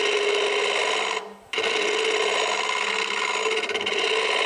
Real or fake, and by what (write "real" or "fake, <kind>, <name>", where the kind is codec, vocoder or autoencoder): real